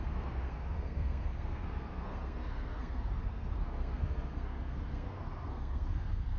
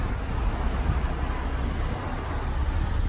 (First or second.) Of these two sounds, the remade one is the first